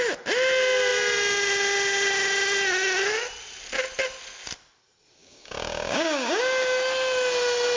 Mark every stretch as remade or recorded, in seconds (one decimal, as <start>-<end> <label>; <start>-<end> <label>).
0.0-5.2 recorded; 5.2-6.4 remade; 6.4-7.8 recorded